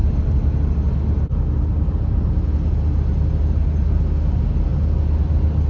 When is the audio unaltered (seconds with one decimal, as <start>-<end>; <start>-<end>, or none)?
0.0-5.7